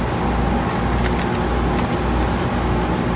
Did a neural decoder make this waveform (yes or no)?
no